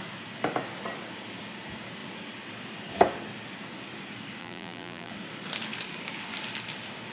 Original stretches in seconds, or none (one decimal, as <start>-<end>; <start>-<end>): 0.0-4.4; 5.1-7.1